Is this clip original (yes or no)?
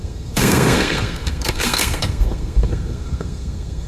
no